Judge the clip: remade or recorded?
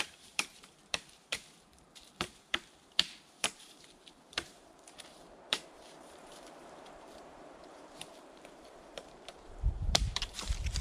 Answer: remade